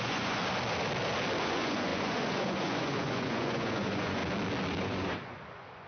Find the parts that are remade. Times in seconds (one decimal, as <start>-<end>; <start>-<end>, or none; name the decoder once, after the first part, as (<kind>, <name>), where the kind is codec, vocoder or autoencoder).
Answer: 0.0-0.4 (vocoder, Vocos); 1.4-4.2; 4.8-5.9